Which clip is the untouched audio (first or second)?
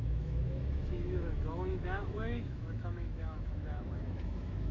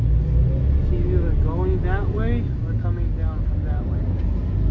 second